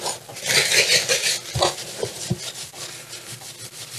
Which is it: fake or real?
fake